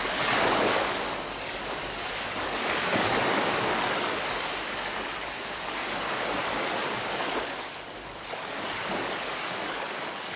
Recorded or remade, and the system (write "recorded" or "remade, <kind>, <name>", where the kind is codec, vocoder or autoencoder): remade, codec, DAC